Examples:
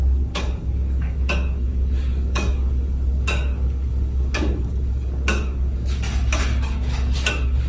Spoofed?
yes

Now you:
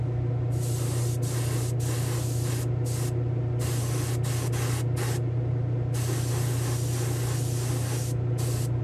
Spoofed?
no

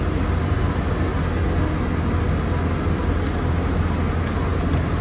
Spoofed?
no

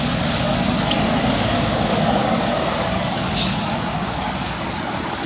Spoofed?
yes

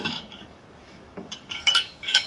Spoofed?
yes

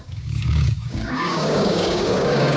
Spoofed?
yes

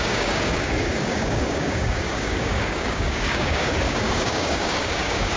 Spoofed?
yes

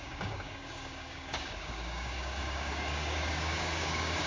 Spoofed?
yes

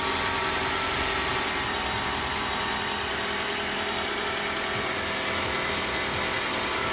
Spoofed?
no